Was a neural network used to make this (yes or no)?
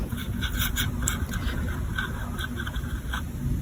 no